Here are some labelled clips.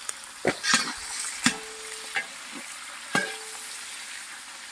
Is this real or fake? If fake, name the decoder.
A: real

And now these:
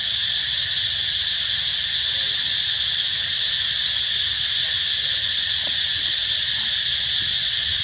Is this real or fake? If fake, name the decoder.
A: real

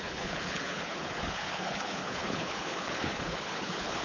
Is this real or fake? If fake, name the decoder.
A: fake, codec, HILCodec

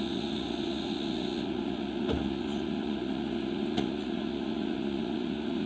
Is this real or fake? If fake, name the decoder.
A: fake, vocoder, Vocos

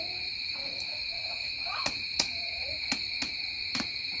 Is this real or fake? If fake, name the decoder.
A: fake, vocoder, Vocos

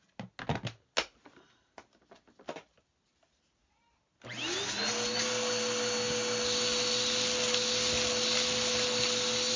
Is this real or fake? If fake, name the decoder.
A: real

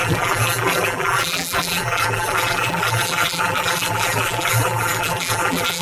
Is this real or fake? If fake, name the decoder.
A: fake, vocoder, BigVGAN v2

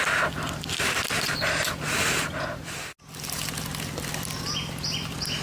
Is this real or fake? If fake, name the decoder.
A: real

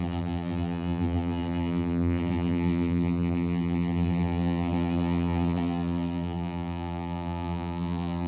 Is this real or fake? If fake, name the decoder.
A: fake, vocoder, BigVGAN v2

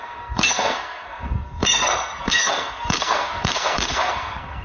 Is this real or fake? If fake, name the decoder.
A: fake, codec, SNAC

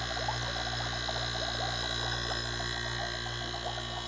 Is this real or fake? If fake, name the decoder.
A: real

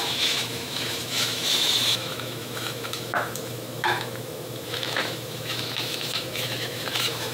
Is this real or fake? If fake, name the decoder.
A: fake, autoencoder, DAC-VAE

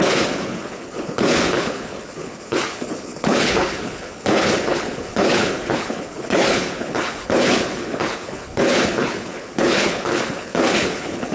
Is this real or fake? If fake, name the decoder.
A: fake, codec, HILCodec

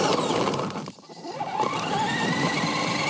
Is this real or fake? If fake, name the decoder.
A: fake, vocoder, BigVGAN v2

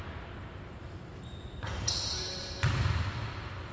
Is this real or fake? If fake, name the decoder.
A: real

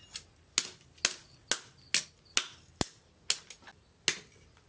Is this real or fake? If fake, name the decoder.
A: real